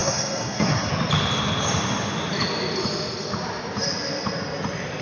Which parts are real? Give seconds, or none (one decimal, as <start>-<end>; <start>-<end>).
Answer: 0.9-5.0